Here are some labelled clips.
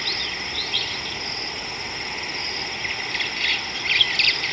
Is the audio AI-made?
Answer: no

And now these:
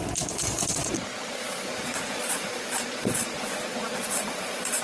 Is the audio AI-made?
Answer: yes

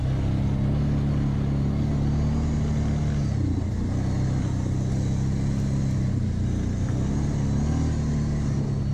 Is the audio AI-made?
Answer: no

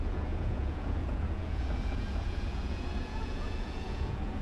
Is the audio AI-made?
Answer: yes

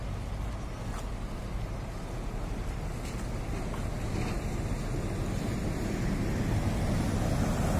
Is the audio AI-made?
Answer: no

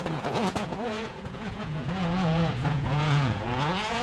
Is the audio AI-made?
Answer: yes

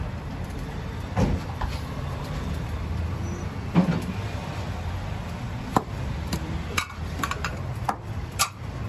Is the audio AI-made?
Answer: yes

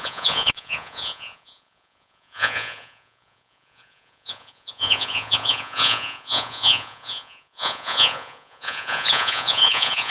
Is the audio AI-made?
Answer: yes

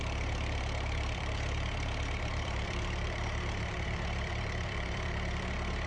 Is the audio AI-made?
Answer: yes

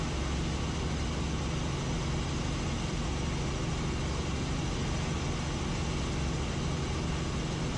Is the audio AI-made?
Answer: no